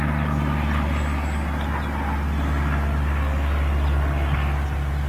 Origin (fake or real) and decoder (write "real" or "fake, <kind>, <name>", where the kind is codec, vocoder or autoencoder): real